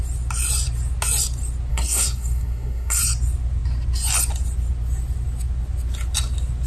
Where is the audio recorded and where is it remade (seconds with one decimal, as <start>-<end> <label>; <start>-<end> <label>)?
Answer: 0.0-1.7 recorded; 1.7-3.0 remade; 3.0-6.7 recorded